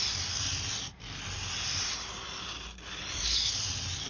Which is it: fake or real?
real